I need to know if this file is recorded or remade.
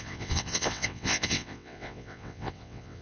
remade